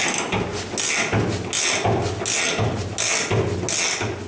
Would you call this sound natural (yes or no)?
yes